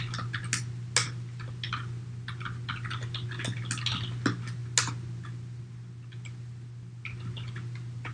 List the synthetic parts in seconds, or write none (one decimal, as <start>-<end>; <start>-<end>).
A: none